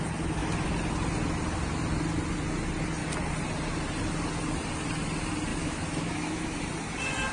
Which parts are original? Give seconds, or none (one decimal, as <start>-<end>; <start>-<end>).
0.0-5.5; 6.6-7.3